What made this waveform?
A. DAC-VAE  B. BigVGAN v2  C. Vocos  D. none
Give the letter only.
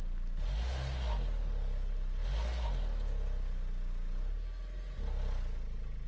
D